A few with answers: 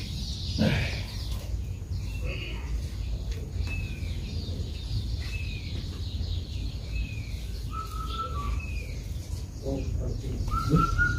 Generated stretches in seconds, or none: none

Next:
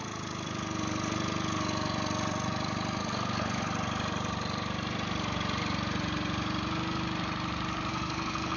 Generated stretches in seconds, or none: 3.0-3.6 (codec, SNAC); 7.9-8.6

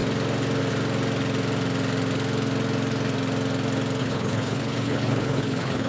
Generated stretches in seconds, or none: 4.0-5.9 (codec, HILCodec)

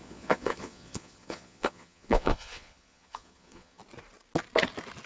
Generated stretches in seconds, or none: 0.0-3.8 (vocoder, Vocos)

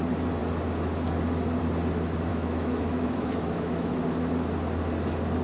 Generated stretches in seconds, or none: 2.3-3.9 (autoencoder, DAC-VAE)